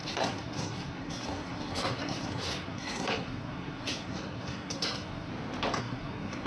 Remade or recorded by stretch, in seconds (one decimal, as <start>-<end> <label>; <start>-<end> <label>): 0.0-5.3 remade; 5.3-5.8 recorded; 5.8-6.5 remade